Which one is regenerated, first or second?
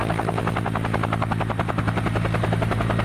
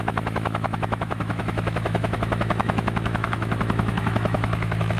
second